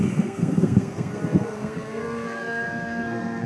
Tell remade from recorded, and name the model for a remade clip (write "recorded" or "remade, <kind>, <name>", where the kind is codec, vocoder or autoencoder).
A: remade, codec, SNAC